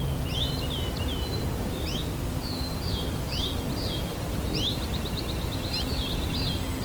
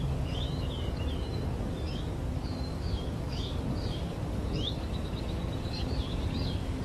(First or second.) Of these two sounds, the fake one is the second